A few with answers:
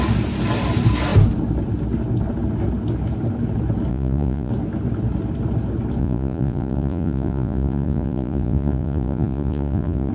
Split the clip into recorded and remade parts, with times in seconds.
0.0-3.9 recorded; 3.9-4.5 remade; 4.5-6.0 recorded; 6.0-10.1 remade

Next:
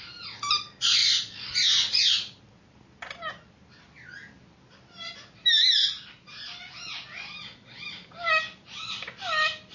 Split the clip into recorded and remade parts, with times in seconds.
0.0-9.7 recorded

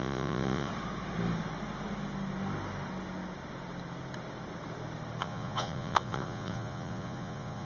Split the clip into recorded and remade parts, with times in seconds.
0.0-0.7 remade; 0.7-5.2 recorded; 5.2-7.6 remade

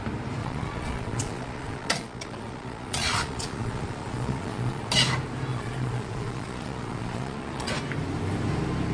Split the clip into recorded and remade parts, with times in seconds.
0.0-0.4 recorded; 0.4-4.9 remade; 4.9-5.5 recorded; 5.5-7.7 remade; 7.7-8.9 recorded

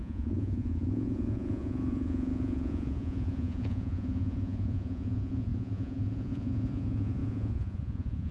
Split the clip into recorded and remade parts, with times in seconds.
0.0-8.3 remade

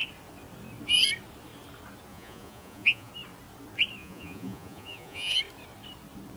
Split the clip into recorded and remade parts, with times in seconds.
0.0-2.1 recorded; 2.1-3.1 remade; 3.1-4.0 recorded; 4.0-5.4 remade; 5.4-6.4 recorded